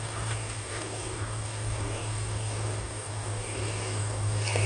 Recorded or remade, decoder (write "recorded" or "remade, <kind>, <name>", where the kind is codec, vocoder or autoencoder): remade, codec, DAC